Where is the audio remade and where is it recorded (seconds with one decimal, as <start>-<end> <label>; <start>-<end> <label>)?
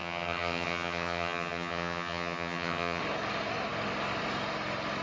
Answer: 0.0-3.0 remade; 3.0-5.0 recorded